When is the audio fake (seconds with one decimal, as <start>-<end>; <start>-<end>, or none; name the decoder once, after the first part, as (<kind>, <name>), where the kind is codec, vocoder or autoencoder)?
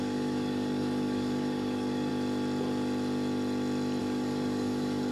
0.0-2.1 (codec, DAC); 4.0-5.1